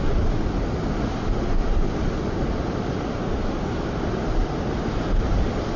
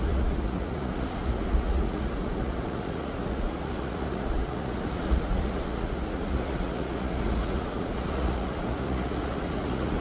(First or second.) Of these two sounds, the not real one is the second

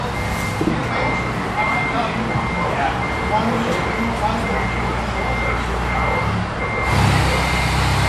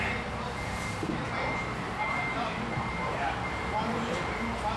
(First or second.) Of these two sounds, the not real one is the second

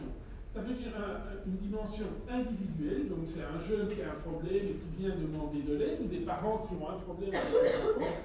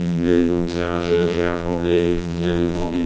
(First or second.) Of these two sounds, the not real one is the second